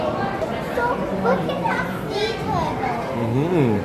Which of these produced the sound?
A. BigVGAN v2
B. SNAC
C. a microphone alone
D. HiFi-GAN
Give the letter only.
C